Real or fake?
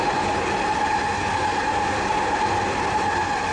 real